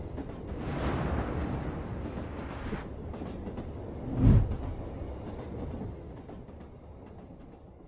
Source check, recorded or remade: recorded